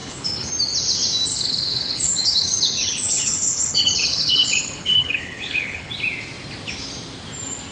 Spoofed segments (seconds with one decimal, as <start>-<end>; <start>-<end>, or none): 0.0-0.5; 1.3-5.9